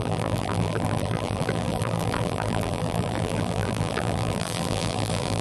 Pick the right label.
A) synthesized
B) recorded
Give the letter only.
A